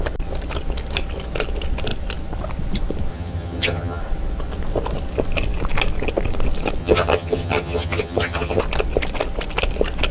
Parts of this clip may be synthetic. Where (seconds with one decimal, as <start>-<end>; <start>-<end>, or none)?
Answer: 3.1-4.0; 6.8-8.6